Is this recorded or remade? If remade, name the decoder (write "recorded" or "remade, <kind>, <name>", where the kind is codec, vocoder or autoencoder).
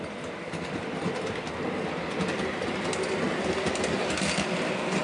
recorded